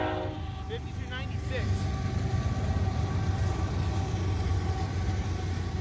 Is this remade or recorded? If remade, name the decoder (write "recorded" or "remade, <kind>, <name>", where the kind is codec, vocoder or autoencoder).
recorded